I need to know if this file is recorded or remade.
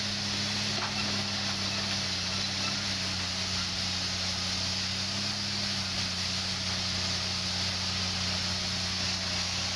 recorded